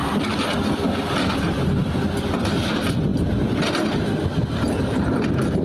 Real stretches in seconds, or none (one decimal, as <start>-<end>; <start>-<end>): 1.1-5.6